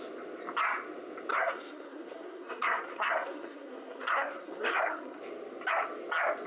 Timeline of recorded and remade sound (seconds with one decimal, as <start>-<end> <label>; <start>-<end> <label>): 0.0-1.3 recorded; 1.3-5.2 remade; 5.2-6.5 recorded